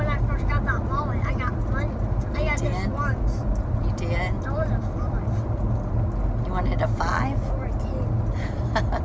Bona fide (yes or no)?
yes